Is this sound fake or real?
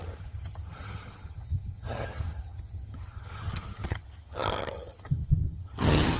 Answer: fake